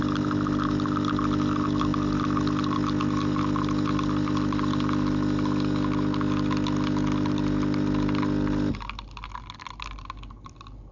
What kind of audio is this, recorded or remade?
recorded